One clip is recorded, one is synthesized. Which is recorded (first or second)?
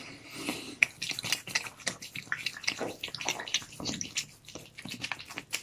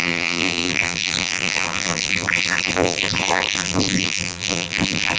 first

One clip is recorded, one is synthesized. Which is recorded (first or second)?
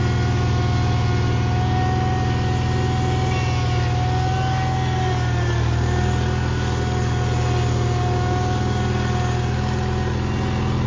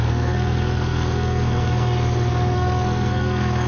first